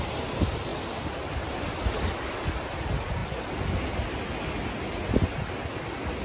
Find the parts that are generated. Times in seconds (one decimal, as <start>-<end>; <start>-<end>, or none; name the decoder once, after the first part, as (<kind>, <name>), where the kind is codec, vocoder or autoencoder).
none